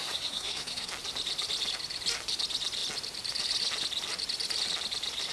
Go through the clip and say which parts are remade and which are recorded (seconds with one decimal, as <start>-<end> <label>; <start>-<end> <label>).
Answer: 0.0-0.9 remade; 0.9-5.3 recorded